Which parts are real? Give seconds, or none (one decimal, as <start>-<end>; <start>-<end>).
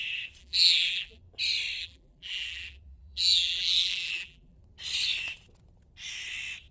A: 0.0-0.4; 1.2-1.8; 4.6-6.7